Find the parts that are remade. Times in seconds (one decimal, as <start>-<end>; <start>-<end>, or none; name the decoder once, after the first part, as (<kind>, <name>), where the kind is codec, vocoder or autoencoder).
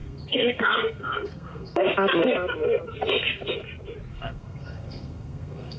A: 0.0-1.8 (codec, SNAC); 4.1-5.8